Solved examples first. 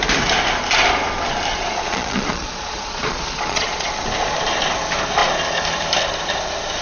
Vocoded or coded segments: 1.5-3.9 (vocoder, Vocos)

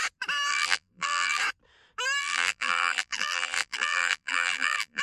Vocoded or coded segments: 0.5-1.4 (vocoder, BigVGAN v2); 2.2-5.0

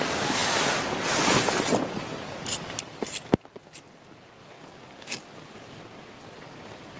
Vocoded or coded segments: 4.4-5.8 (codec, DAC)